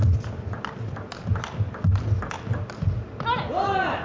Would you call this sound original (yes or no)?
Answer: yes